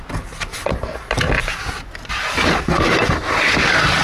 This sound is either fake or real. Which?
real